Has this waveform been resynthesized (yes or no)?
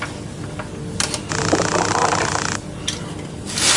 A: no